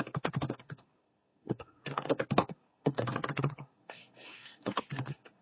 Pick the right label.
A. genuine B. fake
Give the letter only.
B